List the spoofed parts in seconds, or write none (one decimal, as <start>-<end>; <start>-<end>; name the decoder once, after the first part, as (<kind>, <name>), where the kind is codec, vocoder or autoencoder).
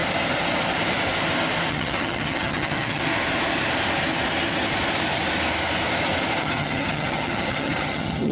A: 1.7-3.0 (vocoder, HiFi-GAN); 6.4-8.3